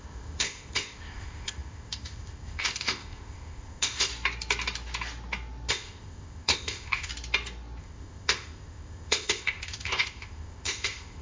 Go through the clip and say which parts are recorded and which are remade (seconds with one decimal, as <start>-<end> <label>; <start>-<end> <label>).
0.0-4.1 remade; 4.1-5.7 recorded; 5.7-7.1 remade; 7.1-7.8 recorded; 7.8-11.2 remade